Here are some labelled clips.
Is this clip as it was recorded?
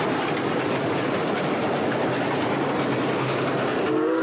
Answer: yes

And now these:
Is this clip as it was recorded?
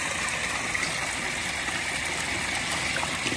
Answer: yes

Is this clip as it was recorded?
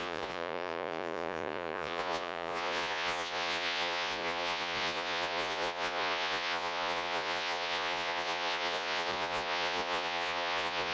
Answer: no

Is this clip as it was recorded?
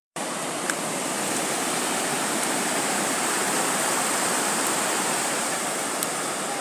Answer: no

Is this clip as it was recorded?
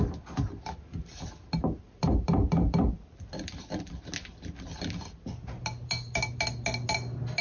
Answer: yes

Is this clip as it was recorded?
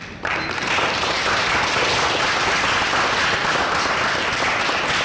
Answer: yes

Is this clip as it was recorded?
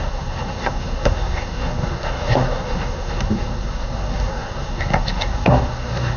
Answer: no